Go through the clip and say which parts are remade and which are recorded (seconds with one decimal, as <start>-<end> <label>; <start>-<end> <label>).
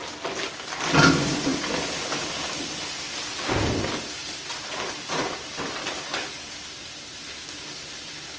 0.0-8.4 recorded